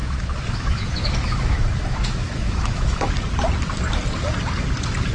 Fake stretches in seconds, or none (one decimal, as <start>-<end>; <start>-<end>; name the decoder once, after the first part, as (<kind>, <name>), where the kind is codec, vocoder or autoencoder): 0.0-3.1 (autoencoder, DAC-VAE)